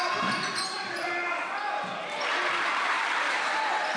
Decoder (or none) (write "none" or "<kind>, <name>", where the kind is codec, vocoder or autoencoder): none